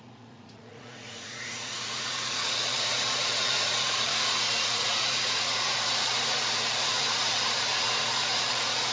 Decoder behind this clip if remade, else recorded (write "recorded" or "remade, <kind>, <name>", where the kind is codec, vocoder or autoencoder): remade, vocoder, Vocos